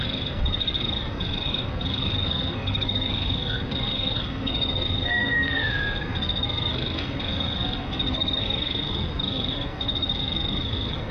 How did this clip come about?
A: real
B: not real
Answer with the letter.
B